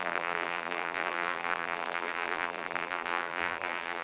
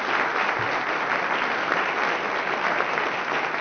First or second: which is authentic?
second